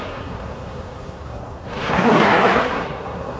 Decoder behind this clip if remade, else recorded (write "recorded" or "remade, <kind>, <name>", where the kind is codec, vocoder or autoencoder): remade, codec, SNAC